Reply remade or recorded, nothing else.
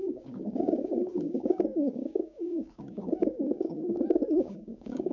remade